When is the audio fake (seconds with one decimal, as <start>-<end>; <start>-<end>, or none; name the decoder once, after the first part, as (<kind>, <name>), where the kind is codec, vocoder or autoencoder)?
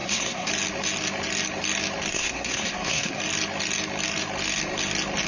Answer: 0.0-0.5 (codec, SNAC); 2.1-3.2